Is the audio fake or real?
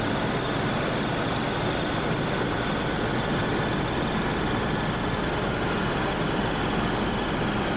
real